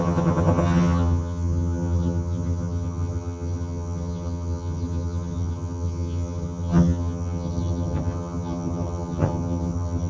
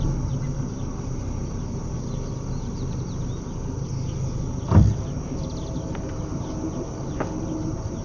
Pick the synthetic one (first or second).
first